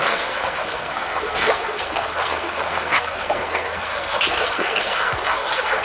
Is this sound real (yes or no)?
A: no